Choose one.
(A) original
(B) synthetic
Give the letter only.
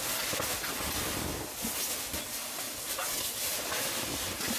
A